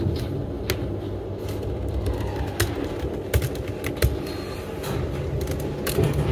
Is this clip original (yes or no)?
yes